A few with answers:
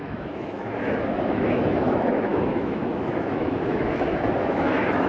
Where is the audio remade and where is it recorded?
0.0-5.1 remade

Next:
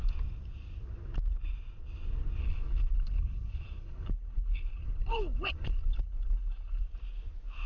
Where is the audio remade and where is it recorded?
0.0-2.4 recorded; 2.4-6.8 remade; 6.8-7.7 recorded

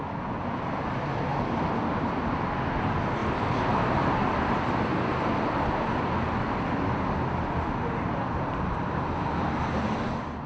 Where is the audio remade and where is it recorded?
0.0-10.5 recorded

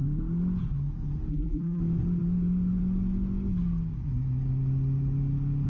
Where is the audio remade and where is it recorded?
0.0-1.3 recorded; 1.3-1.8 remade; 1.8-5.7 recorded

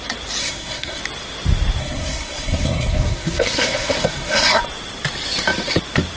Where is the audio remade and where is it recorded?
0.0-0.4 recorded; 0.4-1.0 remade; 1.0-1.8 recorded; 1.8-4.6 remade; 4.6-6.2 recorded

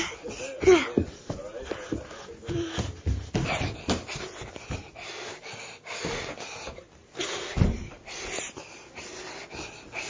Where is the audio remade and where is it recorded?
0.0-7.0 recorded; 7.0-9.1 remade; 9.1-10.1 recorded

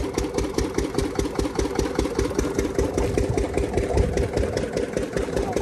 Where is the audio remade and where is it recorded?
0.0-5.6 recorded

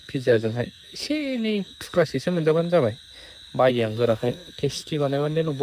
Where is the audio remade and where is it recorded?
0.0-2.6 remade; 2.6-3.7 recorded; 3.7-5.6 remade